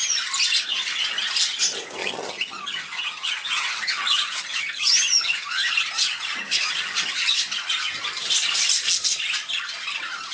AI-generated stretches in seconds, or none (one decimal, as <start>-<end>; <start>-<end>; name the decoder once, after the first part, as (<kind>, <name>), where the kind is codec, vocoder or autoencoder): 2.0-5.7 (vocoder, HiFi-GAN); 6.6-7.4